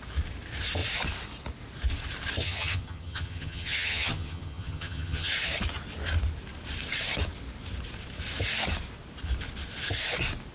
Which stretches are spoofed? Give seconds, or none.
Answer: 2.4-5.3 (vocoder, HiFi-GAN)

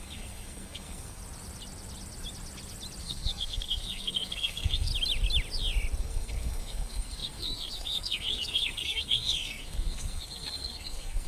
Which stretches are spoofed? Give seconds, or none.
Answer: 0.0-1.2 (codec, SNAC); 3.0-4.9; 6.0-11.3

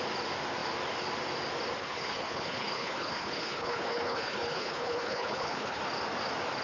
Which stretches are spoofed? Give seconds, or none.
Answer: 1.8-5.8 (codec, HILCodec)

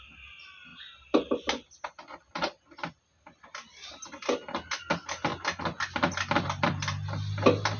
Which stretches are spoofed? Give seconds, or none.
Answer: none

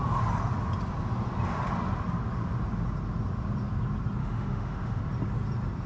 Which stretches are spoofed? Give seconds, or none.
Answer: 4.2-5.0 (autoencoder, DAC-VAE)

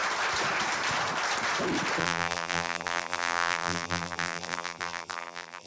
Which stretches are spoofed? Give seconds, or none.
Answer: 2.0-5.7 (vocoder, BigVGAN v2)